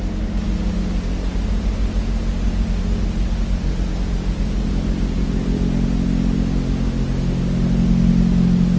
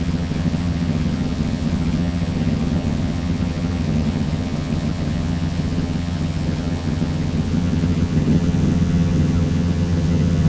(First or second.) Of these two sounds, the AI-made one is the second